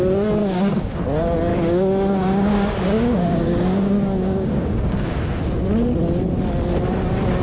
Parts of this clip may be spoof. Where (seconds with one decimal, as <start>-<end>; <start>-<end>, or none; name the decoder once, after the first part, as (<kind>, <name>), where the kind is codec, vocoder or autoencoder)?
0.4-1.0 (codec, DAC); 1.5-5.4